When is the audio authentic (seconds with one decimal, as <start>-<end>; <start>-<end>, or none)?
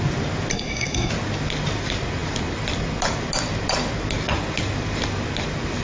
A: 0.0-0.5; 1.1-5.8